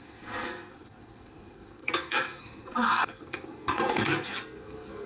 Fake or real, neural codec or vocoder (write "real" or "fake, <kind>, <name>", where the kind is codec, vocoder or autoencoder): fake, codec, SNAC